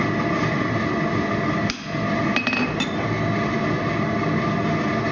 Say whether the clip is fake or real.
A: real